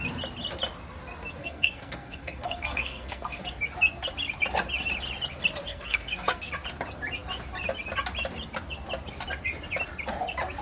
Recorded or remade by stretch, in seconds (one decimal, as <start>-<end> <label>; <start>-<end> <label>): 0.0-1.4 recorded; 1.4-3.4 remade; 3.4-5.7 recorded; 5.7-6.5 remade; 6.5-10.6 recorded

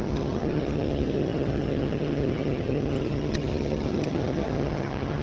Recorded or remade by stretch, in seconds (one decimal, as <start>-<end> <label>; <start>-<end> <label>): 0.0-5.2 remade

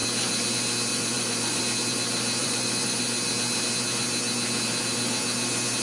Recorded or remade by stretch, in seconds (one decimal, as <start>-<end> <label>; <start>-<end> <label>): 0.0-0.9 recorded; 0.9-1.6 remade; 1.6-2.4 recorded; 2.4-3.0 remade; 3.0-5.8 recorded

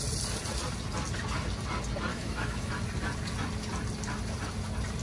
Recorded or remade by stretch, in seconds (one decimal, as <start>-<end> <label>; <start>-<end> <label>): 0.0-2.1 recorded; 2.1-2.7 remade; 2.7-5.0 recorded

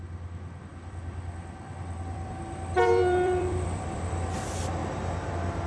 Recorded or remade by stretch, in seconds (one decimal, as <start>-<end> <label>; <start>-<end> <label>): 0.0-0.7 recorded; 0.7-4.1 remade; 4.1-5.7 recorded

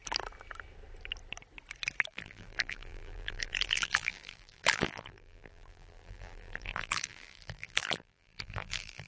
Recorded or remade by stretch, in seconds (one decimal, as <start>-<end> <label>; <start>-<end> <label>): 0.0-2.1 recorded; 2.1-9.1 remade

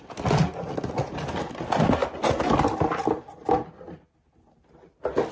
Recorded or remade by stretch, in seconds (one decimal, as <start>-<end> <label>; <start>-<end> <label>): 0.0-5.3 recorded